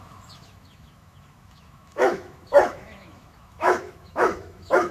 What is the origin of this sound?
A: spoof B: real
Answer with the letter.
A